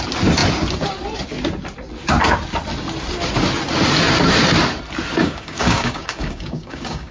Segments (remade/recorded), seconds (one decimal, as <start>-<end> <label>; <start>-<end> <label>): 0.0-5.2 recorded; 5.2-7.1 remade